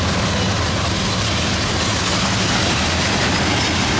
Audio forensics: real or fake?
real